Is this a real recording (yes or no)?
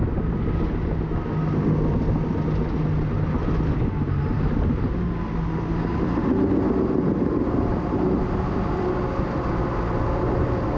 yes